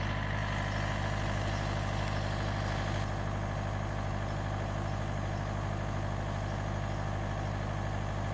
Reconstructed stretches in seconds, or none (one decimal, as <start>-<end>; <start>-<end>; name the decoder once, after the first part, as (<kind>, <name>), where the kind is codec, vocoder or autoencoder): none